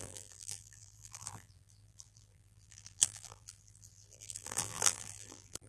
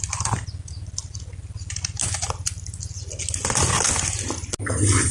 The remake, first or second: first